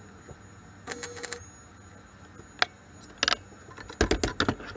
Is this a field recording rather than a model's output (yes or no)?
yes